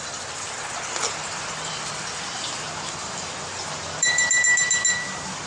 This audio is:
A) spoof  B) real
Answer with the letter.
A